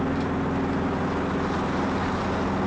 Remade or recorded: recorded